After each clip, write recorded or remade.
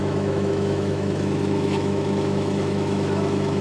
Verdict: remade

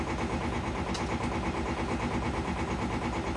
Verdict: recorded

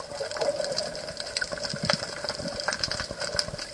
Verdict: recorded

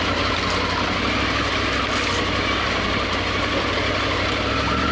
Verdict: recorded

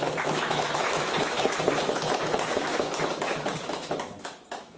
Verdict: remade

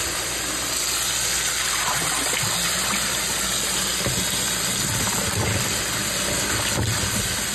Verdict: recorded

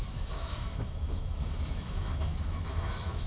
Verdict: remade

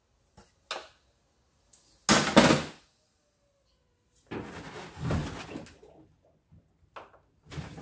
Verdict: recorded